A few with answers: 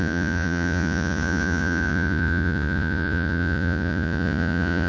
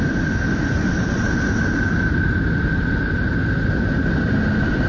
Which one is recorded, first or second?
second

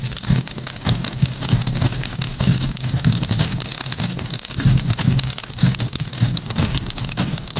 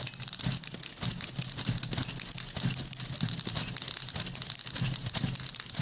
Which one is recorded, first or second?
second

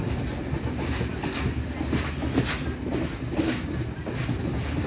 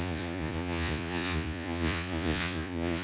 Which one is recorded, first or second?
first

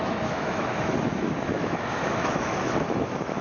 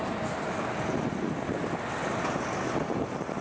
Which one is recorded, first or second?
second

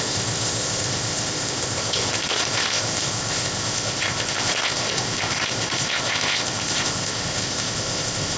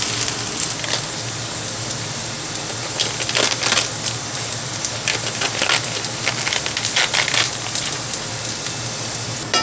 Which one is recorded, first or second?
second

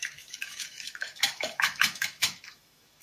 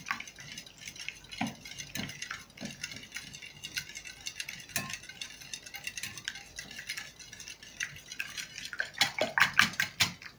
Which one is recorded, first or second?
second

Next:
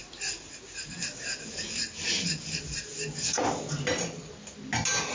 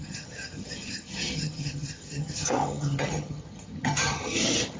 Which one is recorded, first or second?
first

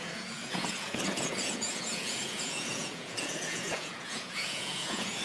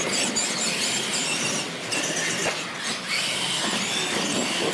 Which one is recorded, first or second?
second